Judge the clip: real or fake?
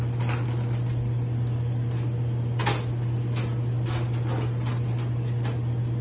real